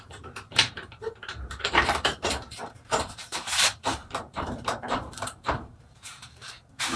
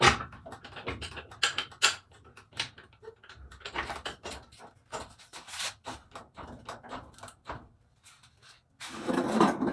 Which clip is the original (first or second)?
second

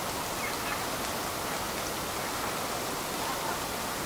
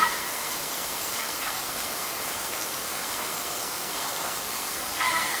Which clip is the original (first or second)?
first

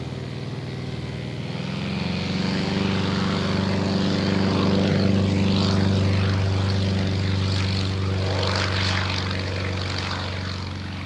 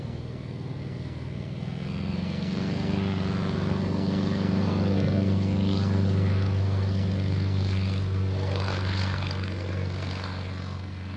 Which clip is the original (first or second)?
first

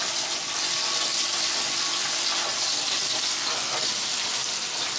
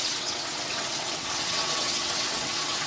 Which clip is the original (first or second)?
first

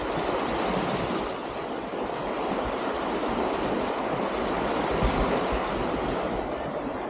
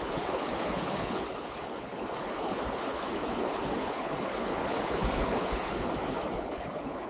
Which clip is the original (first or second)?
first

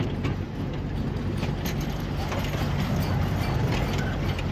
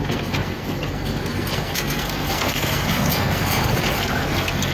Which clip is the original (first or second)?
first